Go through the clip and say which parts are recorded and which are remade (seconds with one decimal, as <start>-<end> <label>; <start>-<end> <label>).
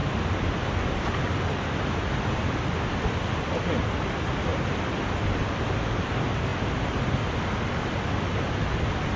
0.0-9.2 recorded